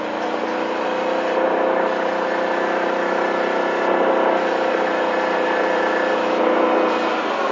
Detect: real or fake real